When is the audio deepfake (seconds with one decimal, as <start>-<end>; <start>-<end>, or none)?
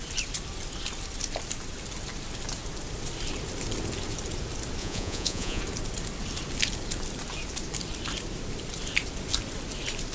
4.8-5.6